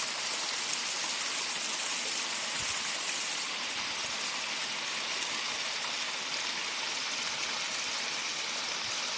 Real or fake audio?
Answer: real